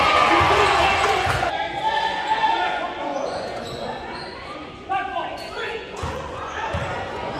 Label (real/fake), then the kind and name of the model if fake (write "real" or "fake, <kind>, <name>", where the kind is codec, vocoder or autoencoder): fake, vocoder, Vocos